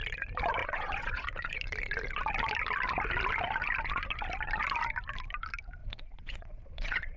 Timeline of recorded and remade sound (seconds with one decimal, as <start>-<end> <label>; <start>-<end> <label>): 0.0-0.6 recorded; 0.6-1.6 remade; 1.6-5.8 recorded; 5.8-7.2 remade

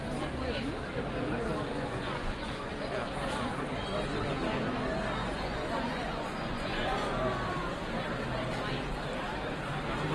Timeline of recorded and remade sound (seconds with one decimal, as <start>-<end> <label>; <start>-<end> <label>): 0.0-1.7 recorded; 1.7-2.7 remade; 2.7-5.2 recorded; 5.2-7.2 remade; 7.2-10.1 recorded

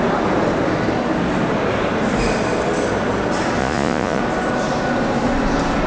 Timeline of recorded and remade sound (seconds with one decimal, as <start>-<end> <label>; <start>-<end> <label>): 0.0-3.6 recorded; 3.6-4.2 remade; 4.2-5.9 recorded

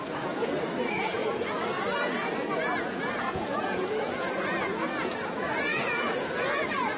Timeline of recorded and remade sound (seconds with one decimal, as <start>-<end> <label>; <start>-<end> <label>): 0.0-7.0 remade

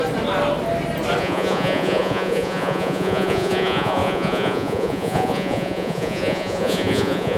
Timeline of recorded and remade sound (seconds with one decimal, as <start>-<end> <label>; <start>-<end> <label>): 0.0-1.2 recorded; 1.2-7.4 remade

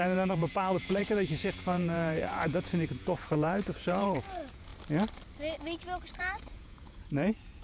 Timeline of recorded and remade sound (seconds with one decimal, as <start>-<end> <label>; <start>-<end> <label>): 0.0-4.7 remade; 4.7-6.2 recorded; 6.2-7.6 remade

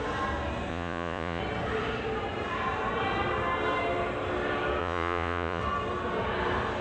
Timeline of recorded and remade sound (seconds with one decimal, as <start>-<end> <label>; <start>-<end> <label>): 0.0-0.7 recorded; 0.7-1.4 remade; 1.4-4.8 recorded; 4.8-5.6 remade; 5.6-6.8 recorded